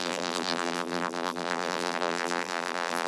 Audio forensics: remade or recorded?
remade